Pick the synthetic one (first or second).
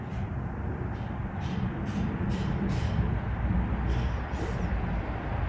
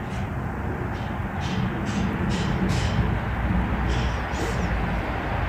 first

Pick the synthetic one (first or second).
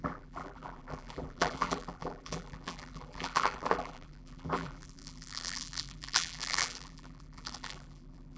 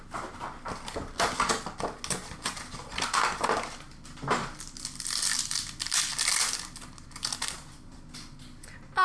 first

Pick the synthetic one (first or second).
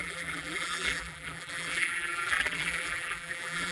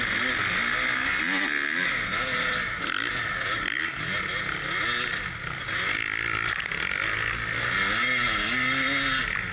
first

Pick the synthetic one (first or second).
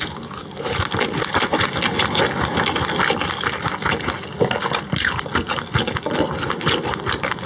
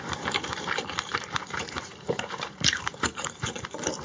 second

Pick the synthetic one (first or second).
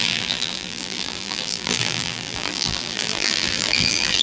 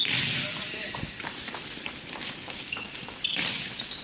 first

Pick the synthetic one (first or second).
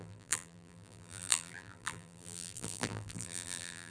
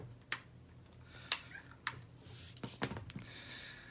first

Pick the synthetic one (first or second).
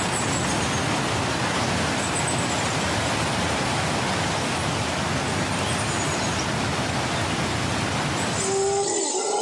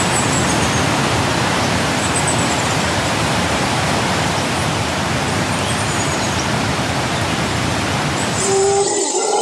second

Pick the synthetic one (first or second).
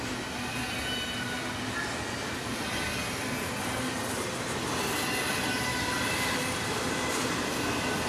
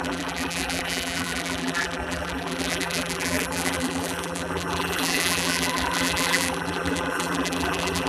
second